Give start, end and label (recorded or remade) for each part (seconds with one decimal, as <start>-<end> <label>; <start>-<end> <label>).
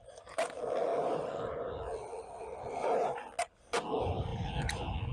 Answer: 0.0-0.9 recorded; 0.9-1.7 remade; 1.7-4.3 recorded; 4.3-5.1 remade